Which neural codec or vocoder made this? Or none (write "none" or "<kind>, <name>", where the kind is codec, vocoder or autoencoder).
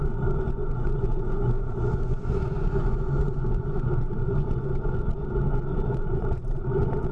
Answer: vocoder, Vocos